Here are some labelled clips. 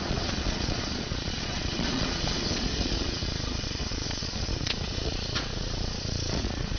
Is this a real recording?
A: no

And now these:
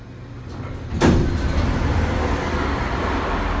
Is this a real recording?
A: yes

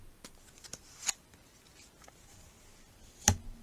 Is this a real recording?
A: yes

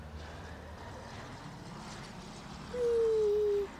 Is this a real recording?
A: yes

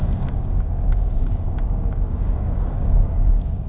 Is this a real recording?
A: no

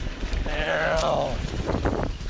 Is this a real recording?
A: no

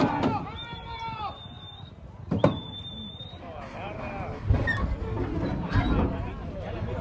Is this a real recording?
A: yes